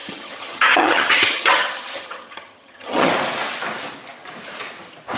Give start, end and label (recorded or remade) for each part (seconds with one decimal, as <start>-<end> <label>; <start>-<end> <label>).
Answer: 0.0-3.1 remade; 3.1-5.2 recorded